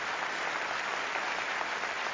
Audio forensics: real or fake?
fake